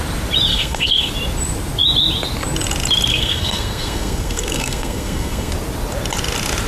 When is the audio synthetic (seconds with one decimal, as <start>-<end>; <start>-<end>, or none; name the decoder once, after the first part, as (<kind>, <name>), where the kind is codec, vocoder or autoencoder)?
0.5-1.1 (codec, SNAC); 3.1-5.5